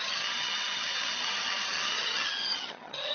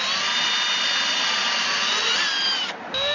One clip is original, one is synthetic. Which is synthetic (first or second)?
first